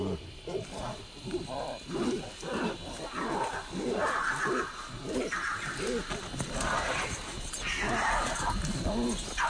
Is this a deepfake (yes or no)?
no